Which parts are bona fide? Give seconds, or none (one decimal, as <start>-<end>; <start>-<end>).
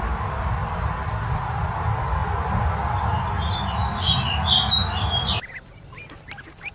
0.0-0.6; 1.6-2.2; 3.5-4.8; 6.0-6.7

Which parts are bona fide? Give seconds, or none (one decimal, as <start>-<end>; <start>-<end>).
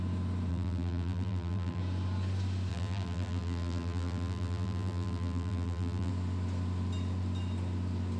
0.0-0.5; 1.8-2.7; 6.1-8.2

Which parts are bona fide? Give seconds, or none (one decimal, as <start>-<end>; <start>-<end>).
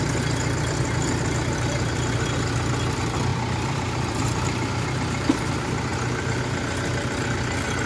0.0-3.3; 5.5-7.9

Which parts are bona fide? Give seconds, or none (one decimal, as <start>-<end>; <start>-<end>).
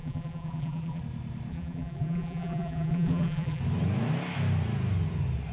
1.0-1.5; 3.6-5.5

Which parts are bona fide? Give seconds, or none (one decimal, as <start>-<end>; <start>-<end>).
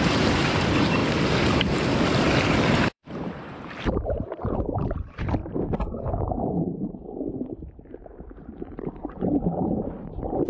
1.0-2.5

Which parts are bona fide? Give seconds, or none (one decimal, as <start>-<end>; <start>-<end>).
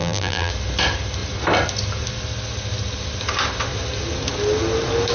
0.5-5.1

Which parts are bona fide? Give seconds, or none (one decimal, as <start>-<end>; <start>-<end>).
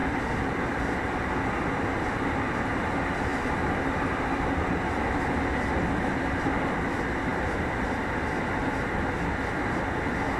2.6-3.3; 4.2-7.3; 9.7-10.4